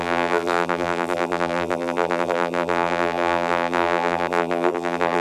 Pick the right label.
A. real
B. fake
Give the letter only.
B